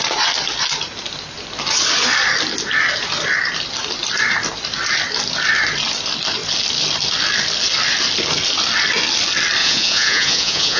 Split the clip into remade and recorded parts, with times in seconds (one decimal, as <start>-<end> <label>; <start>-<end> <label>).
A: 0.0-9.6 recorded; 9.6-10.8 remade